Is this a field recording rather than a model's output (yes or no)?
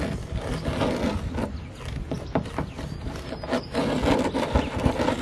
yes